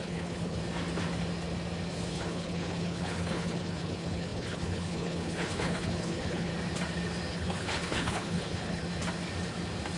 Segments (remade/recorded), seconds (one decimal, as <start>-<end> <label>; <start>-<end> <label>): 0.0-0.6 remade; 0.6-2.1 recorded; 2.1-6.5 remade; 6.5-7.3 recorded; 7.3-8.8 remade; 8.8-10.0 recorded